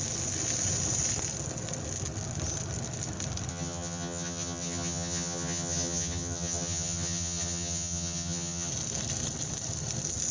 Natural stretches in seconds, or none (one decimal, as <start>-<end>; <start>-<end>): 0.0-3.5; 8.7-10.3